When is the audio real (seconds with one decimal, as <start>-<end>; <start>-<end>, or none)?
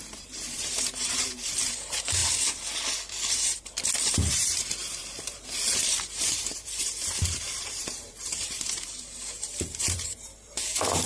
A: 2.2-3.3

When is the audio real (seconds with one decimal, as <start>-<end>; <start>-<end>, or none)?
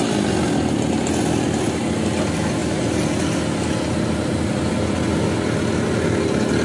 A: 0.0-6.6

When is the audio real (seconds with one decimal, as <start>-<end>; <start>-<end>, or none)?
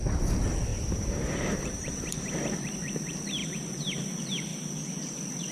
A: 0.0-0.7; 2.3-3.4; 4.0-4.5; 5.1-5.5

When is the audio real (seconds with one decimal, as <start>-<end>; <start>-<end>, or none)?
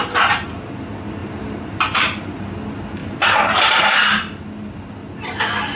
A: 0.0-1.2; 2.5-3.0; 4.4-5.8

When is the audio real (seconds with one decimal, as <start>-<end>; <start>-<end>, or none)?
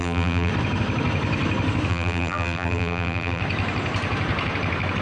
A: 0.5-1.9; 3.4-5.0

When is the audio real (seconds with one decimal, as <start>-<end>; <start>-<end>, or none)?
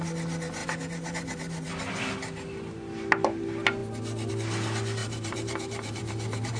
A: 0.0-0.6; 1.7-5.0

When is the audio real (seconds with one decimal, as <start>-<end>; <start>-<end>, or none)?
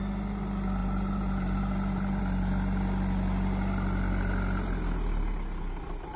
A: 0.0-0.8; 2.2-6.2